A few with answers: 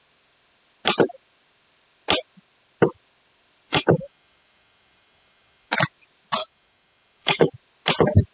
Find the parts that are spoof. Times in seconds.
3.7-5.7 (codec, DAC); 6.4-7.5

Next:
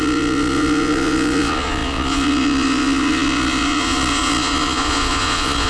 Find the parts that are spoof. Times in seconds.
0.0-5.7 (vocoder, Vocos)